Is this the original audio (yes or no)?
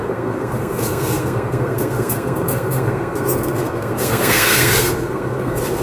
no